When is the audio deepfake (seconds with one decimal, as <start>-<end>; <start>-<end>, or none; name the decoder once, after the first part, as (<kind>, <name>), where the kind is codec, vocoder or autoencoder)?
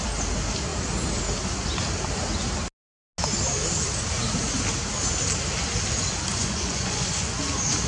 6.3-7.3 (vocoder, Vocos)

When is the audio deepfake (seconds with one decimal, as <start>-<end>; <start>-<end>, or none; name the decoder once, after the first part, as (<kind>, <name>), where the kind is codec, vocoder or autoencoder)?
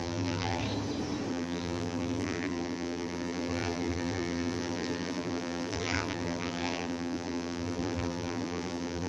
0.0-0.6 (vocoder, BigVGAN v2); 1.3-9.1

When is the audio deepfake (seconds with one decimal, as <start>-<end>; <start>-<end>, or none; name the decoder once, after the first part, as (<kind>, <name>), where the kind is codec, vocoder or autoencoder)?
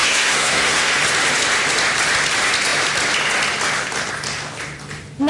0.0-0.9 (codec, SNAC)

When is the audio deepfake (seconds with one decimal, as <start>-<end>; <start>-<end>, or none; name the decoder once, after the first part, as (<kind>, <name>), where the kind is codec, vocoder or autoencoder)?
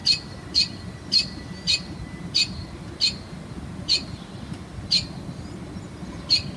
none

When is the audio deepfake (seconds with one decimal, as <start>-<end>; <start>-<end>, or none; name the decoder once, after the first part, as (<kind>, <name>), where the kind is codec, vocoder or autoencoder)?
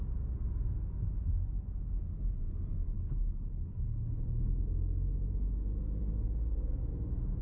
2.8-4.6 (codec, HILCodec); 6.0-6.8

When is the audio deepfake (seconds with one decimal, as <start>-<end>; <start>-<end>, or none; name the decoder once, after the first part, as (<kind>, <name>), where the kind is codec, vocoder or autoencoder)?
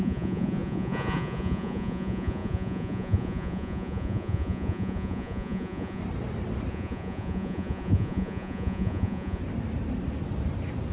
0.0-6.0 (vocoder, Vocos); 6.7-9.4